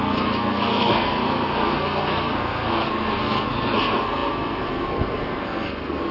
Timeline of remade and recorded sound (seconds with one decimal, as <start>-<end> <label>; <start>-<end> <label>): 0.0-6.1 remade